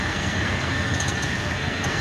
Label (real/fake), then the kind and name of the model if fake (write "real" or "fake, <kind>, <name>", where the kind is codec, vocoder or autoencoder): fake, codec, SNAC